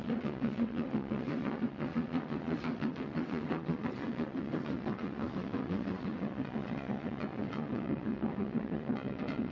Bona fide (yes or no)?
no